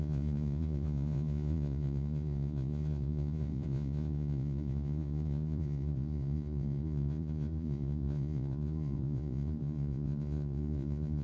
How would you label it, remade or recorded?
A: remade